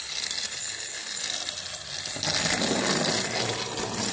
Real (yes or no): yes